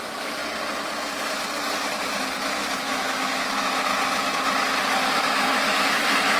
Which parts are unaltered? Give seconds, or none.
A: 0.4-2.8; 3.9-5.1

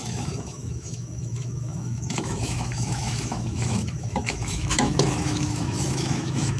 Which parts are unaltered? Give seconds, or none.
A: none

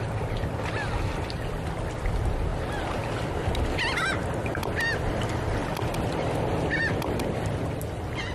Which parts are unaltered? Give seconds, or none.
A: 0.0-8.3

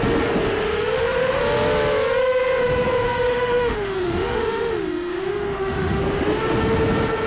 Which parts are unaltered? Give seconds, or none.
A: 0.0-0.9; 1.4-3.3; 6.0-7.3

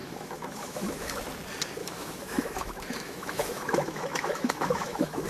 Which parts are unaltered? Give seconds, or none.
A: 1.2-1.8

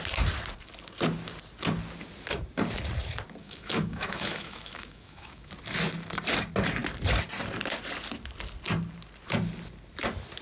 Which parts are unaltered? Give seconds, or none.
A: 0.0-3.4; 5.5-10.4